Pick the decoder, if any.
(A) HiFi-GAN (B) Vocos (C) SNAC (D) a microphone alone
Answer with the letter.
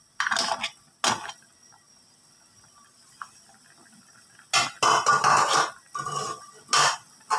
D